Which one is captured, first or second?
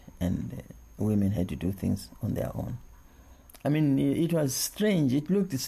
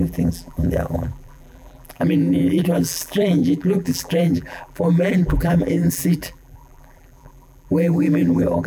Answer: first